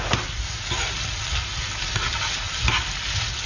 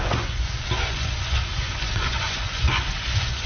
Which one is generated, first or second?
second